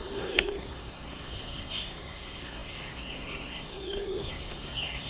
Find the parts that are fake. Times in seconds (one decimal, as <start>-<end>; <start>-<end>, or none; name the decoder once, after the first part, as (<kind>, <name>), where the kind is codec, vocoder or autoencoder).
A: 0.0-5.1 (codec, SNAC)